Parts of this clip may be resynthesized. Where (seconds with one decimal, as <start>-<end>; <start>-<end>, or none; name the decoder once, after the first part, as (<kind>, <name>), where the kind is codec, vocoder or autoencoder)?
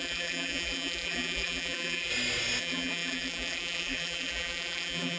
0.0-2.1 (vocoder, BigVGAN v2); 2.6-5.2